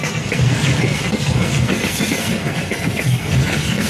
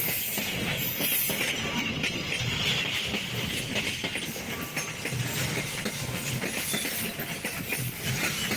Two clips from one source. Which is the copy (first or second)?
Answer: first